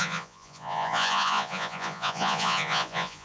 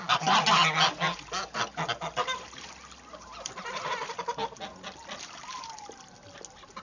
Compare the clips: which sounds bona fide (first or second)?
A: second